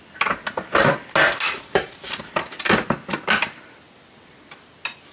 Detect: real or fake real